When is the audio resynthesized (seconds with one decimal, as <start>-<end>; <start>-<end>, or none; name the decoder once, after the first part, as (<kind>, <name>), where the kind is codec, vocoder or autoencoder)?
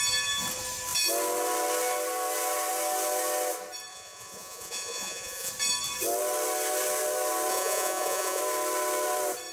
3.9-5.5 (vocoder, Vocos); 7.5-8.4